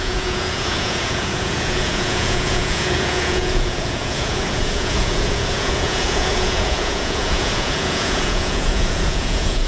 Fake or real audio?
fake